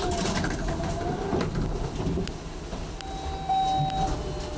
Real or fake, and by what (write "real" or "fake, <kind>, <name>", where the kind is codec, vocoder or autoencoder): real